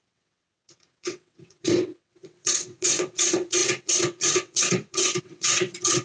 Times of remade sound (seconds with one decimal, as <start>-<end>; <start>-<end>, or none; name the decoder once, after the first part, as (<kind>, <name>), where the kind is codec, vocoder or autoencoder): 0.0-6.0 (vocoder, WaveNeXt)